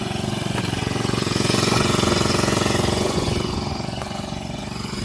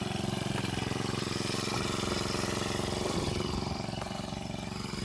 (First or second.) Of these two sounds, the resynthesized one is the first